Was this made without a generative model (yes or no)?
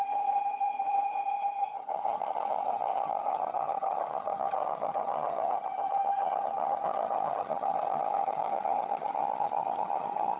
no